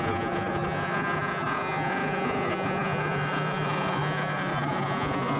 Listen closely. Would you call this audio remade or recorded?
remade